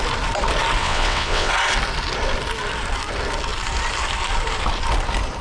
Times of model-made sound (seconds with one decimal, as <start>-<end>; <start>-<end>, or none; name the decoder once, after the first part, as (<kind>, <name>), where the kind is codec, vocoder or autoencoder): 0.8-1.5 (vocoder, WaveNeXt)